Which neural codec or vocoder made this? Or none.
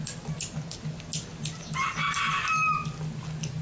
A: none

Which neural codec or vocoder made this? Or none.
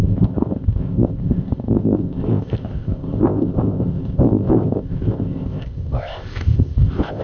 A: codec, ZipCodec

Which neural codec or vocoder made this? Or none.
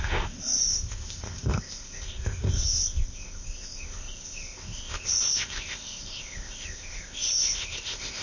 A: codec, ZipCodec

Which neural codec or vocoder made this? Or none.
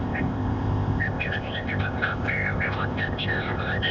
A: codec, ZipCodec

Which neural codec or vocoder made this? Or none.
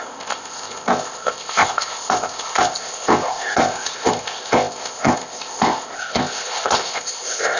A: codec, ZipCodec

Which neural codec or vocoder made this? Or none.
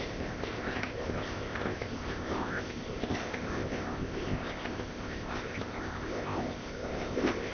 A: codec, ZipCodec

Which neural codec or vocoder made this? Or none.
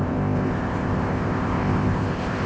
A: codec, ZipCodec